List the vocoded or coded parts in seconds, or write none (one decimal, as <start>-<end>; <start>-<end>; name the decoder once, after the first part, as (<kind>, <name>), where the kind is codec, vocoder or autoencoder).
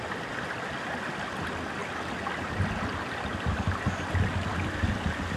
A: none